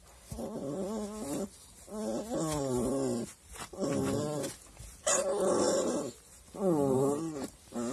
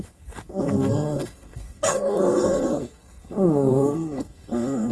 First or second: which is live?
first